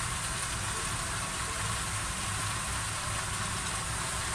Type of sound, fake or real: real